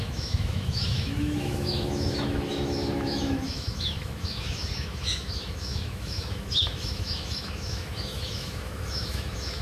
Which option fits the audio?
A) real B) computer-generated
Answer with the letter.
B